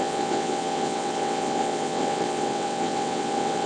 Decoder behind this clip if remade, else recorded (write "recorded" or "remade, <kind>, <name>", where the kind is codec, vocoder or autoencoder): remade, vocoder, WaveNeXt